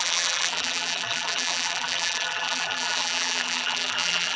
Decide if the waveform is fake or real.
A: fake